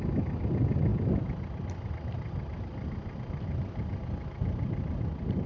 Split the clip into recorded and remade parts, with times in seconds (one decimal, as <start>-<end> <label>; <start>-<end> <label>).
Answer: 0.0-5.5 recorded